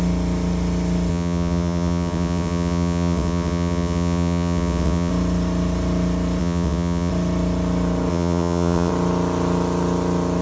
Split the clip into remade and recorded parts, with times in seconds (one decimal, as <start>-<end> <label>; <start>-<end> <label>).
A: 0.0-1.1 recorded; 1.1-5.1 remade; 5.1-6.4 recorded; 6.4-7.1 remade; 7.1-8.1 recorded; 8.1-8.9 remade; 8.9-10.4 recorded